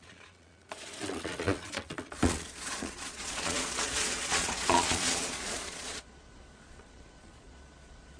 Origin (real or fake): fake